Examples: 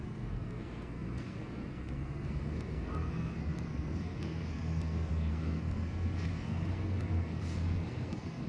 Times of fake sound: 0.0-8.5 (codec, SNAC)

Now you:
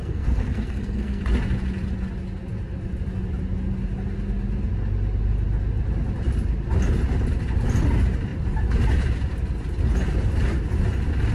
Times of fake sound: 0.0-1.2 (codec, SNAC)

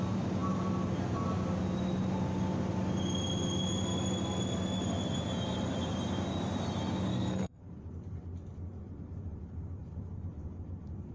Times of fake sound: 7.1-7.6 (codec, SNAC)

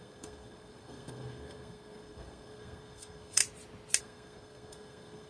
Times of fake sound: 0.0-3.4 (codec, SNAC); 4.0-5.3

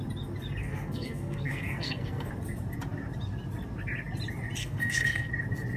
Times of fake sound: 0.6-2.3 (codec, SNAC); 4.6-5.3

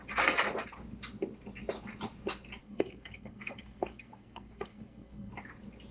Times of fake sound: 2.6-5.3 (codec, SNAC)

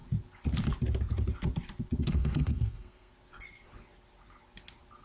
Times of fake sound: 2.0-3.1 (codec, SNAC)